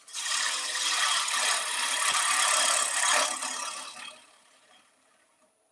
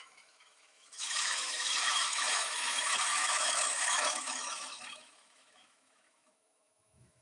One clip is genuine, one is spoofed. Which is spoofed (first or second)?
second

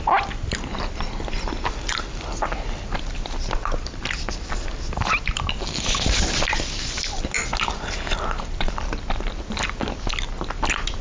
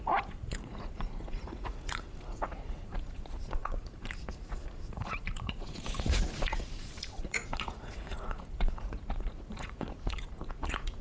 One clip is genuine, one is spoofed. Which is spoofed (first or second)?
second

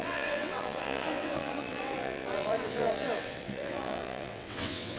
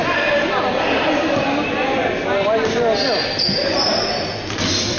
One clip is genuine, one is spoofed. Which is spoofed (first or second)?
first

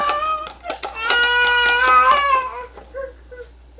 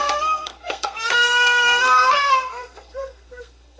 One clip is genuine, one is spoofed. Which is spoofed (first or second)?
second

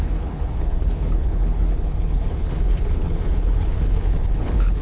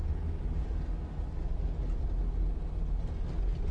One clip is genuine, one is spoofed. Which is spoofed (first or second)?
first